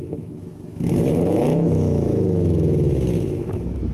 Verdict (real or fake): fake